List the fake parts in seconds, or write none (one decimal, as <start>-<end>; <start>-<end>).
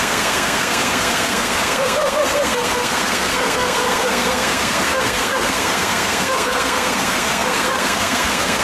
0.0-8.6